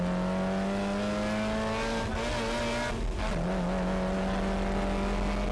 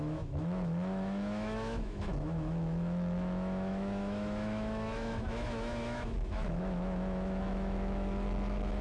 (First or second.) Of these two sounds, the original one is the first